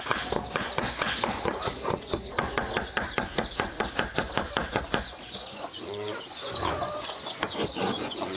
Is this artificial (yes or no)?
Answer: yes